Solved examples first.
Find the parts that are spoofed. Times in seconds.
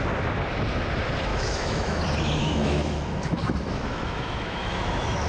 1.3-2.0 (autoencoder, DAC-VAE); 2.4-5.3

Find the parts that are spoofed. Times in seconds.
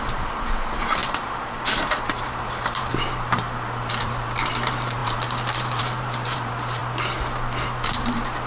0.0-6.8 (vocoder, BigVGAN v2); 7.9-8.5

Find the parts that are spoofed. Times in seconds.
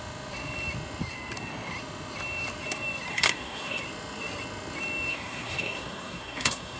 3.1-3.8 (codec, SNAC); 5.1-6.8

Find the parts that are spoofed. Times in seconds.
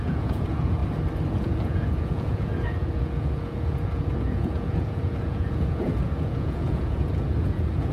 0.0-0.8 (vocoder, Vocos); 1.3-7.9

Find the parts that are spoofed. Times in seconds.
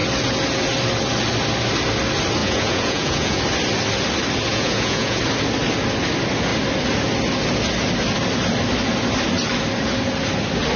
2.4-3.4 (vocoder, Vocos); 4.5-5.2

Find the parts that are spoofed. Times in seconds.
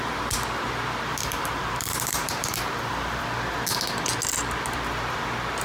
1.1-3.2 (vocoder, BigVGAN v2)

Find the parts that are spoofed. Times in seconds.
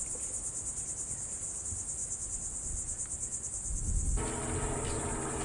none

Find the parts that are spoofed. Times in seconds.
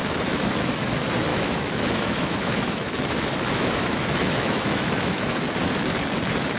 0.0-0.9 (autoencoder, DAC-VAE); 1.3-5.3